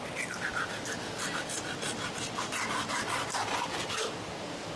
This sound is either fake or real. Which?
real